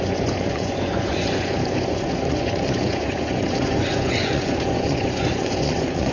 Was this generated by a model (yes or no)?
yes